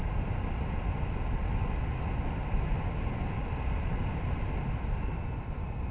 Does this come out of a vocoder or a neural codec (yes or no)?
no